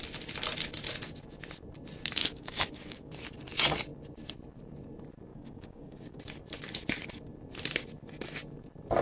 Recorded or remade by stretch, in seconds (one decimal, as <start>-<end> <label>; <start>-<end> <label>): 0.0-2.2 recorded; 2.2-3.1 remade; 3.1-5.3 recorded; 5.3-6.2 remade; 6.2-9.0 recorded